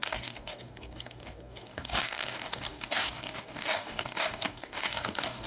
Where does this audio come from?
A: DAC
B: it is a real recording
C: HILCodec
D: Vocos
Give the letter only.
A